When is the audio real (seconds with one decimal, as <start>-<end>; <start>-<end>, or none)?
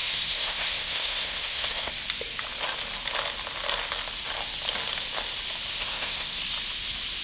1.9-5.8; 6.4-7.2